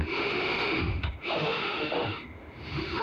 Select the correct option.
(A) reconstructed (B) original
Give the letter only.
A